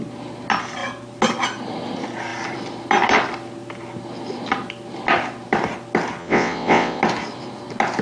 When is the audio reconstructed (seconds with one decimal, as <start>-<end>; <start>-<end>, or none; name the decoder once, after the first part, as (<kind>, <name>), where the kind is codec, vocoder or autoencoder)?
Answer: 6.2-7.0 (vocoder, WaveNeXt)